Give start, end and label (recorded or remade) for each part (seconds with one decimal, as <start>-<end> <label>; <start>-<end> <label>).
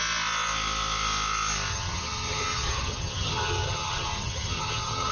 0.0-1.7 recorded; 1.7-5.1 remade